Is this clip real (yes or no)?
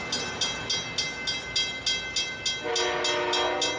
yes